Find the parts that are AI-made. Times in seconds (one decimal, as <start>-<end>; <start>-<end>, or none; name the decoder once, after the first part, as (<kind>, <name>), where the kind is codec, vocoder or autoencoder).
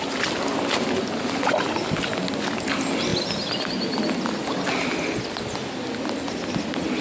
none